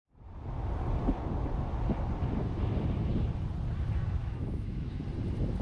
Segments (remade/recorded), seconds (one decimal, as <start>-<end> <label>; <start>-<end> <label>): 0.0-4.2 recorded; 4.2-5.0 remade; 5.0-5.6 recorded